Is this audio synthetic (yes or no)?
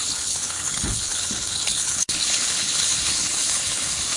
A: yes